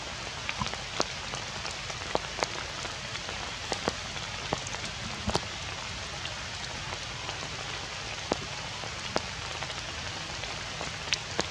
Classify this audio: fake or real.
real